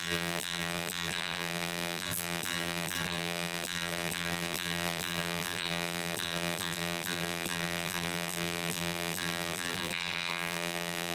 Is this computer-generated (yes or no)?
yes